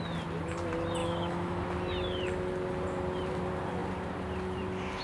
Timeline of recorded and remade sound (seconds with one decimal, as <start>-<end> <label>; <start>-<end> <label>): 0.0-1.0 recorded; 1.0-1.6 remade; 1.6-5.0 recorded